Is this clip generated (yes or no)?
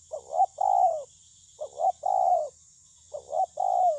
no